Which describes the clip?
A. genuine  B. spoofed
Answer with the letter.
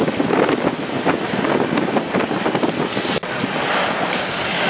A